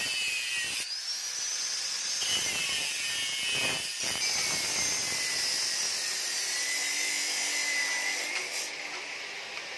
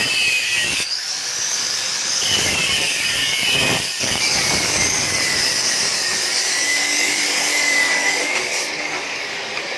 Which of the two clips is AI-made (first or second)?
second